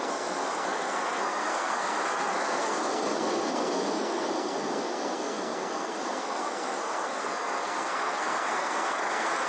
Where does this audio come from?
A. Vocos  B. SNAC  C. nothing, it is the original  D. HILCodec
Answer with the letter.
B